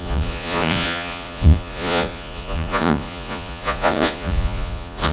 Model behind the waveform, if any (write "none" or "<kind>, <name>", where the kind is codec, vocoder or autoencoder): vocoder, Vocos